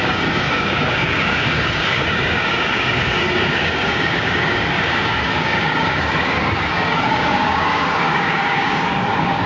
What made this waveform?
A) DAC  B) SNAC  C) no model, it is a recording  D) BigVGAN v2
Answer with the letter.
A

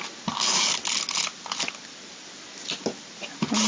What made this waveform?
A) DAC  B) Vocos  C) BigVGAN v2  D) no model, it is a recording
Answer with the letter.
D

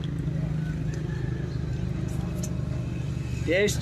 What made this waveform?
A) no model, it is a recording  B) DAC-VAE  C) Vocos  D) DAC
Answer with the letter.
A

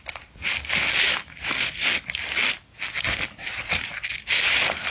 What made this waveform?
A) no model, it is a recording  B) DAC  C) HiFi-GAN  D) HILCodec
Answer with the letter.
A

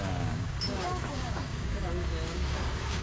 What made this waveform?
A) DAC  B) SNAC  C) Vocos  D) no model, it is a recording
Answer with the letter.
A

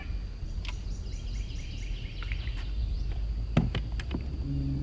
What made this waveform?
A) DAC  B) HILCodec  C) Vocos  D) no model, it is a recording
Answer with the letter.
D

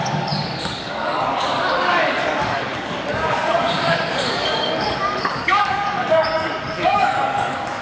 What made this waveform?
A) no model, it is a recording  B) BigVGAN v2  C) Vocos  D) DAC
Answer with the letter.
D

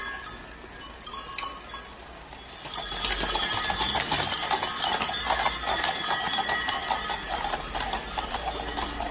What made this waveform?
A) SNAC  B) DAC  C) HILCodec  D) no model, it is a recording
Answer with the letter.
D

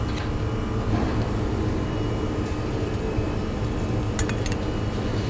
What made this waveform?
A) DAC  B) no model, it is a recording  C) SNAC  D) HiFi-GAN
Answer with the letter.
B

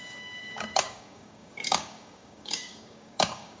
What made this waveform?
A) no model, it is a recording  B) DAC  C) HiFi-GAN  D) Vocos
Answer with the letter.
B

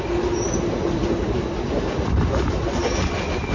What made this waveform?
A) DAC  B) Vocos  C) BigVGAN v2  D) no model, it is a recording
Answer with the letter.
D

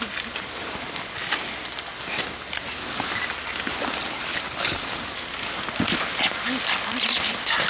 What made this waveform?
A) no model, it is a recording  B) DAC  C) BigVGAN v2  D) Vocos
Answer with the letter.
A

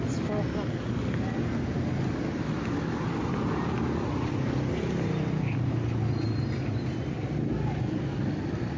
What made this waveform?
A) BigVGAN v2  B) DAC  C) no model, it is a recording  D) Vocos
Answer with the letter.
C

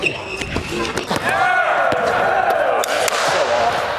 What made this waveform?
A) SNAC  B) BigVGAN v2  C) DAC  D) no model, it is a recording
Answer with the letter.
D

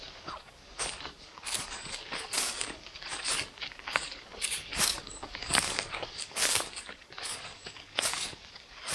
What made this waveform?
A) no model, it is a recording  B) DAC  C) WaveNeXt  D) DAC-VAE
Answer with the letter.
B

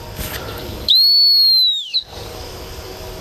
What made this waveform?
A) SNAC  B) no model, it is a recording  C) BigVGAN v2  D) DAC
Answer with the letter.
D